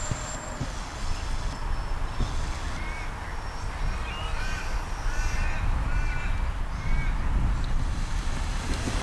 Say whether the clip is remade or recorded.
recorded